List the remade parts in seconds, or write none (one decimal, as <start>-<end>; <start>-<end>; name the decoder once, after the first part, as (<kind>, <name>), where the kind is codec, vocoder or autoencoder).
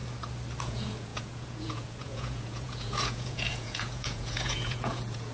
0.6-5.3 (vocoder, Vocos)